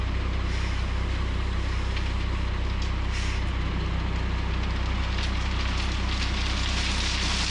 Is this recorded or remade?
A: recorded